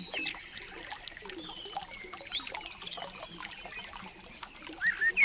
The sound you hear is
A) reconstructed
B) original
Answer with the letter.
B